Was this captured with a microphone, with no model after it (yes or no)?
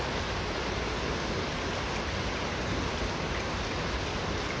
yes